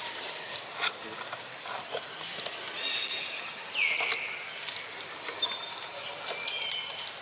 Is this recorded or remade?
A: recorded